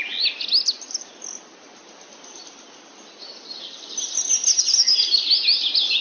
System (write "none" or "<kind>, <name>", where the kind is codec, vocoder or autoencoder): none